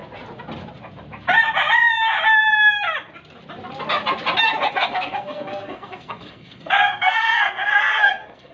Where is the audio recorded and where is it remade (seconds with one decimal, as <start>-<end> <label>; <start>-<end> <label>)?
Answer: 0.0-4.7 recorded; 4.7-8.5 remade